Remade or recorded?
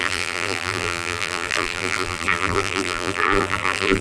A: remade